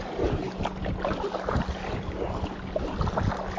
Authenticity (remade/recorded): recorded